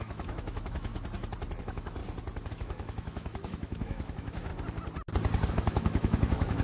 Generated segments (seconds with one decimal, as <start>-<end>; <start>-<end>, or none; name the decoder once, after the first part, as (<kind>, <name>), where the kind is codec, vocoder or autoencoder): 0.0-0.9 (autoencoder, DAC-VAE); 1.6-2.0; 2.5-4.5; 5.5-6.6